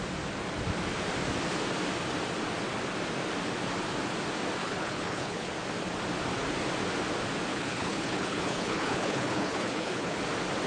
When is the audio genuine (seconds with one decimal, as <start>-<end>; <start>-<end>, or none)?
0.0-4.6; 5.5-7.5; 10.2-10.7